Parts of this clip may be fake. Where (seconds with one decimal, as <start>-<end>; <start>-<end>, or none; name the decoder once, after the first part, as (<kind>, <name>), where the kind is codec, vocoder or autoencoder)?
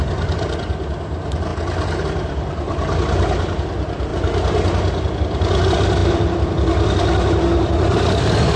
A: 0.0-1.5 (vocoder, BigVGAN v2); 2.0-4.1; 5.2-8.6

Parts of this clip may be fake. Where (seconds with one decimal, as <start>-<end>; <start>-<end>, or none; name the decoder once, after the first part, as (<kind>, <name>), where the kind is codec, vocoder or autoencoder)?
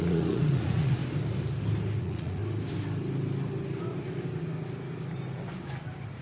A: 0.0-1.0 (vocoder, Vocos); 2.0-2.4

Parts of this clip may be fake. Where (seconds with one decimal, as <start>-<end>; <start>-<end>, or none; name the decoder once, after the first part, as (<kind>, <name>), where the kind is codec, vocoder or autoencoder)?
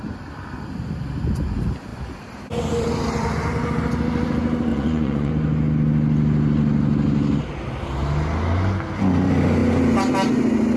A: 4.7-5.3 (vocoder, Vocos)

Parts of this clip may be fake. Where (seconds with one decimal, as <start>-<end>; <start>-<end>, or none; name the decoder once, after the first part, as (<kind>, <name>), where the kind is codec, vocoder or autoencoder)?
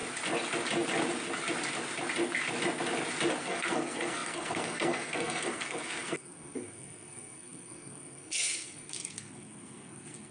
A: 3.4-10.3 (codec, SNAC)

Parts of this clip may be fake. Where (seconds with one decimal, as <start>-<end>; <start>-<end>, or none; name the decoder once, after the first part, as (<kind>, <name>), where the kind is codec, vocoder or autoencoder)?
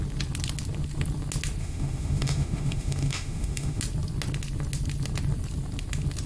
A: 1.6-3.8 (autoencoder, DAC-VAE)